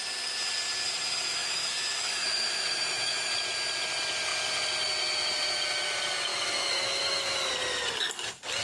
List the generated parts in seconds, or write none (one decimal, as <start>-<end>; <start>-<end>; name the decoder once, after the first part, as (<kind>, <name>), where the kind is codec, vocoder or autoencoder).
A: 1.4-3.3 (autoencoder, DAC-VAE); 6.3-7.5